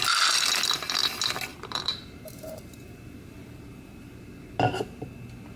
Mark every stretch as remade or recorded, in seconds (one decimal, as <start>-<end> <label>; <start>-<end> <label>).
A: 0.0-1.5 recorded; 1.5-4.7 remade; 4.7-5.6 recorded